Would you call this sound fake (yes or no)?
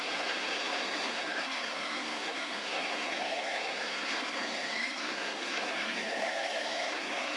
yes